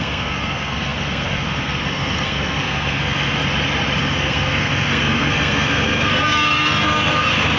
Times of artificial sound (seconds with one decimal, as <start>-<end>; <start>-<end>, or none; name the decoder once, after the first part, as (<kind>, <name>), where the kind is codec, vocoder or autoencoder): 0.0-3.4 (codec, SNAC); 4.0-7.6